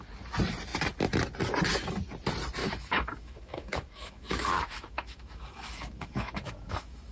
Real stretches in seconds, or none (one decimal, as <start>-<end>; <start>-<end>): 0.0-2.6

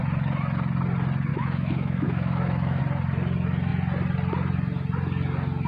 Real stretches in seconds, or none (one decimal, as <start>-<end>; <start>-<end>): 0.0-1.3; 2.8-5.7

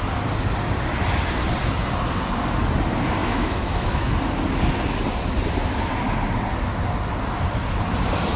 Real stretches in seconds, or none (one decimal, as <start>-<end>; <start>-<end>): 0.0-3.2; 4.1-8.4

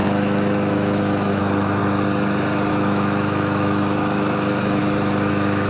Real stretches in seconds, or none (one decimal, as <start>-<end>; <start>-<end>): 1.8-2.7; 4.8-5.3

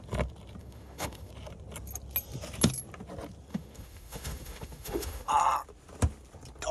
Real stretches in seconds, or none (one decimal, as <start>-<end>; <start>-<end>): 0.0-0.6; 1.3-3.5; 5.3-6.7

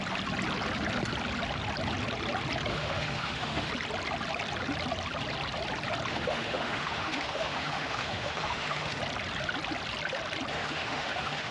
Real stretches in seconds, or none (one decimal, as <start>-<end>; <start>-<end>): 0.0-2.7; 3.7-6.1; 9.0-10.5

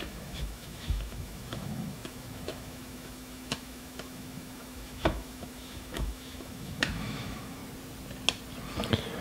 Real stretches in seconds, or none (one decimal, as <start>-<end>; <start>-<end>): 7.6-9.2

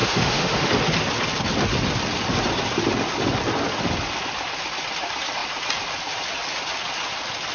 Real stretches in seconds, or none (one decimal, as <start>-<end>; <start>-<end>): 0.7-7.5